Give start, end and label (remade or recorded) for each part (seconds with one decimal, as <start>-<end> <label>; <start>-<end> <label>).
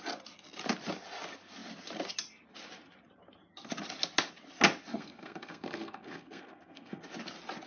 0.0-4.9 recorded; 4.9-7.0 remade; 7.0-7.7 recorded